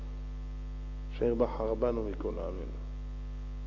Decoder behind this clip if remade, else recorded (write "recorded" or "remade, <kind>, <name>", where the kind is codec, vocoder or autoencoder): recorded